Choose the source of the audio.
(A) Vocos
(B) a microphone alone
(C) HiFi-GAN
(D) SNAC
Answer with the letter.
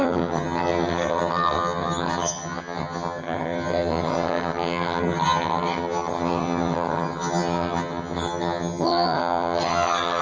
C